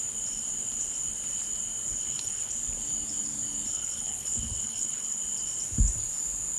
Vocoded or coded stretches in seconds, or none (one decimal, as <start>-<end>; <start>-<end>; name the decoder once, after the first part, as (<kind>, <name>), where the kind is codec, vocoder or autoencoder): 1.9-2.5 (codec, HILCodec); 3.7-5.2